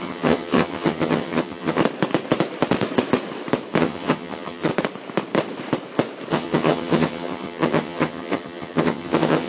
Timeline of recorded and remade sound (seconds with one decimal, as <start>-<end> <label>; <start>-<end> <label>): 0.0-1.8 remade; 1.8-3.8 recorded; 3.8-4.7 remade; 4.7-6.3 recorded; 6.3-9.5 remade